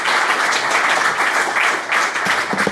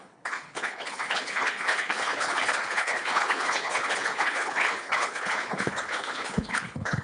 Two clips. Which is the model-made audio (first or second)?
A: second